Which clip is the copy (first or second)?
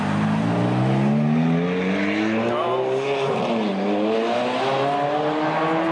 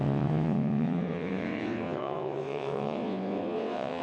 second